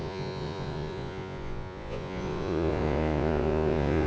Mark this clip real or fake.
fake